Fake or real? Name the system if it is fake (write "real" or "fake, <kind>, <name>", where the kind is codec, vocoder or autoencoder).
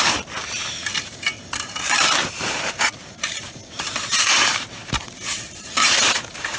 fake, vocoder, BigVGAN v2